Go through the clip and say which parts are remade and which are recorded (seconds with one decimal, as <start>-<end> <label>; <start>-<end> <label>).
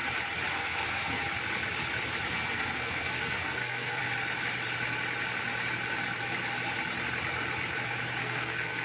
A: 0.0-0.5 recorded; 0.5-1.2 remade; 1.2-2.3 recorded; 2.3-4.0 remade; 4.0-8.2 recorded; 8.2-8.8 remade